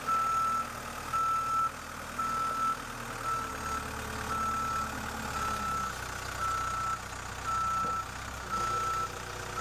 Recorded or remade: recorded